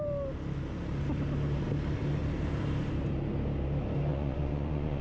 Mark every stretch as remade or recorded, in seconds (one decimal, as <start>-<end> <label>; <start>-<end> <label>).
0.0-4.1 recorded; 4.1-5.0 remade